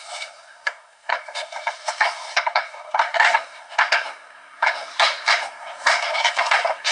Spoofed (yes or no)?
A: yes